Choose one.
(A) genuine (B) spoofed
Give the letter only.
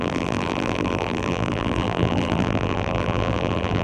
B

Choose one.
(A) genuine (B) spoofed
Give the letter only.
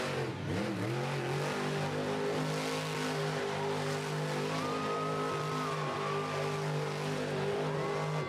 A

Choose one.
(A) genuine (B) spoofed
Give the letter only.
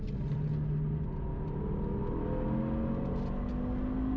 A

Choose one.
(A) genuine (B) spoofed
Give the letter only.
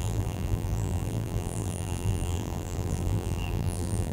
B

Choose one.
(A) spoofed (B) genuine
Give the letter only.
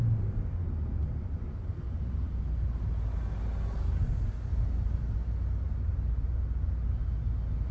B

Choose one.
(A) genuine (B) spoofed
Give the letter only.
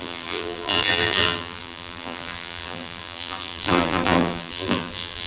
B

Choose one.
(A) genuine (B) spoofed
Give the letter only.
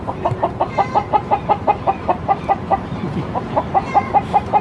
B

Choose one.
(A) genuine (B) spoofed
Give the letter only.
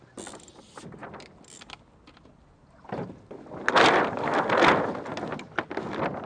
A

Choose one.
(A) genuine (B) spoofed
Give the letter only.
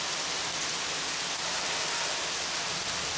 B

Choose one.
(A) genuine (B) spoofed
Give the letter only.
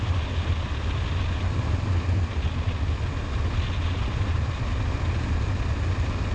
A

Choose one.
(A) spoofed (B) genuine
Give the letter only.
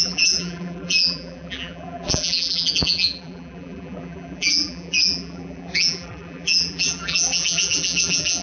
A